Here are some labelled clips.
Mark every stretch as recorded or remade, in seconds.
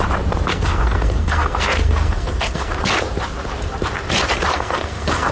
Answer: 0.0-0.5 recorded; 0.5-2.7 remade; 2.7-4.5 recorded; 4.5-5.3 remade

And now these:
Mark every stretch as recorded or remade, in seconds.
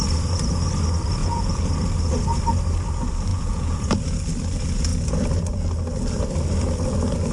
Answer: 0.0-1.2 recorded; 1.2-1.7 remade; 1.7-3.3 recorded; 3.3-4.0 remade; 4.0-7.3 recorded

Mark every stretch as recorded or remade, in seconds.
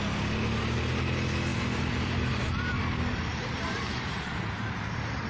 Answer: 0.0-1.5 recorded; 1.5-2.7 remade; 2.7-3.3 recorded; 3.3-5.3 remade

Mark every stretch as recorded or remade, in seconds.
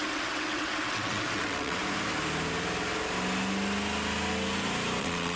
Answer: 0.0-1.8 remade; 1.8-5.0 recorded; 5.0-5.4 remade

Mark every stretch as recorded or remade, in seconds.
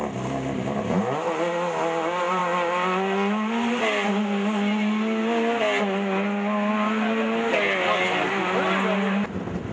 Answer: 0.0-9.7 recorded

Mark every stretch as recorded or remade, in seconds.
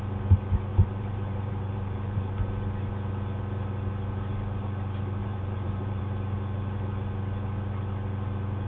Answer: 0.0-0.7 recorded; 0.7-2.3 remade; 2.3-5.2 recorded; 5.2-6.0 remade; 6.0-8.7 recorded